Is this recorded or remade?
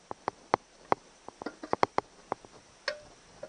recorded